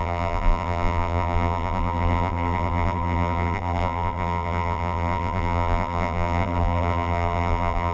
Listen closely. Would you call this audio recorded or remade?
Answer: remade